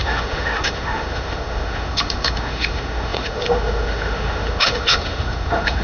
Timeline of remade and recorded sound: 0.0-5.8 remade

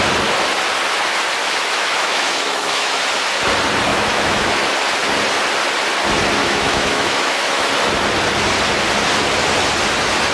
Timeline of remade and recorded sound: 0.0-1.4 recorded; 1.4-3.0 remade; 3.0-3.9 recorded; 3.9-4.5 remade; 4.5-6.4 recorded; 6.4-7.7 remade; 7.7-10.3 recorded

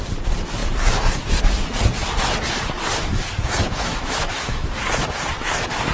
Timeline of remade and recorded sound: 0.0-3.9 recorded; 3.9-4.7 remade; 4.7-5.9 recorded

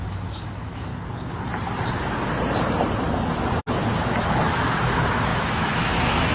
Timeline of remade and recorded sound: 0.0-0.9 remade; 0.9-4.2 recorded; 4.2-6.3 remade

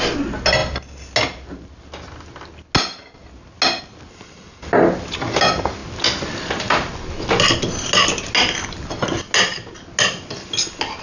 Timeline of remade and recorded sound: 0.0-11.0 recorded

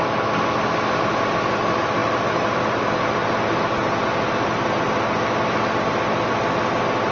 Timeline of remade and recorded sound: 0.0-7.1 recorded

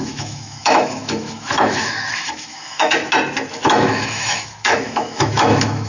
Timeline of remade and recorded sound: 0.0-3.0 remade; 3.0-3.5 recorded; 3.5-5.9 remade

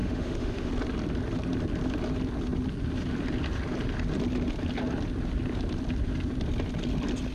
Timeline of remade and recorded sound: 0.0-0.7 remade; 0.7-7.3 recorded